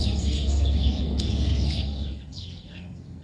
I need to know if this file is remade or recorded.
remade